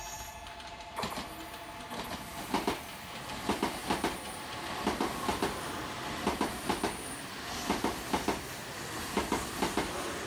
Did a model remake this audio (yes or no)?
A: no